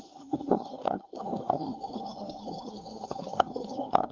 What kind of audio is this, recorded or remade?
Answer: remade